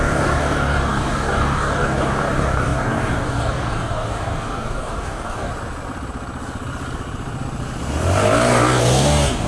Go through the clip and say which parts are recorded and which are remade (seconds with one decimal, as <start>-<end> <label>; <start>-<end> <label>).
0.0-5.5 remade; 5.5-8.8 recorded; 8.8-9.5 remade